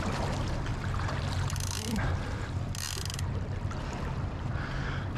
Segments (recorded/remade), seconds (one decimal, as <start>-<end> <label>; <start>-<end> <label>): 0.0-5.2 recorded